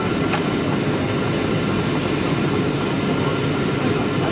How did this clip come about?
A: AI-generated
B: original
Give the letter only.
B